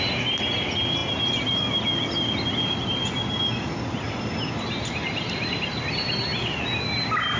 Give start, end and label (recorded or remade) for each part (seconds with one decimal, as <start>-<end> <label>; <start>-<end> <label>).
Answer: 0.0-7.4 recorded